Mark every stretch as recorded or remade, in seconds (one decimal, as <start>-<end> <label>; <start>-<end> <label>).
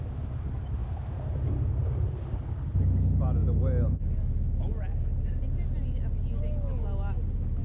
0.0-7.6 recorded